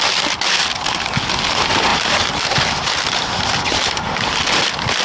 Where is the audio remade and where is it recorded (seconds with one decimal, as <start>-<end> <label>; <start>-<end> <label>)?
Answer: 0.0-1.9 recorded; 1.9-4.4 remade; 4.4-5.0 recorded

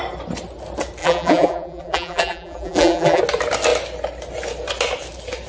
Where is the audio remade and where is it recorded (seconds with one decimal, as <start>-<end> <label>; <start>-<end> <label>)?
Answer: 0.0-1.0 recorded; 1.0-3.2 remade; 3.2-5.5 recorded

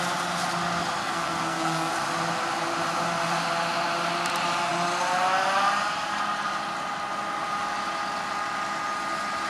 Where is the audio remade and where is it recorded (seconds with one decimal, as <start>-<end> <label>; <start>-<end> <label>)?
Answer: 0.0-1.0 recorded; 1.0-1.9 remade; 1.9-9.5 recorded

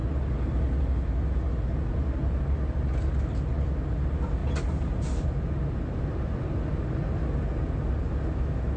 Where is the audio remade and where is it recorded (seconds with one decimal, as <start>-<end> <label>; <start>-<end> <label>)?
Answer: 0.0-8.8 recorded

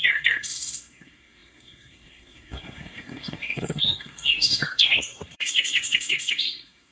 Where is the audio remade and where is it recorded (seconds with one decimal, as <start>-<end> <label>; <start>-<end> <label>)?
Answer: 0.0-6.9 remade